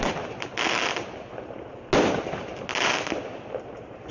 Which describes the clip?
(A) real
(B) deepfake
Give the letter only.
A